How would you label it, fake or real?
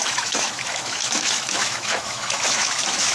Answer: fake